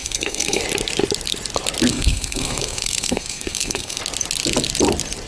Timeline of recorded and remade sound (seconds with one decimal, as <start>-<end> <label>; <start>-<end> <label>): 0.0-0.6 remade; 0.6-1.9 recorded; 1.9-4.0 remade; 4.0-5.3 recorded